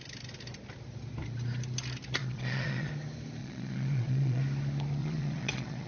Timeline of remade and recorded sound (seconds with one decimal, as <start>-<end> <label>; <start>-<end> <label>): 0.0-2.2 recorded; 2.2-2.9 remade; 2.9-3.4 recorded; 3.4-4.4 remade; 4.4-5.0 recorded; 5.0-5.9 remade